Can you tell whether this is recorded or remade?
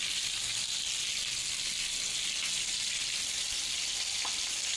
recorded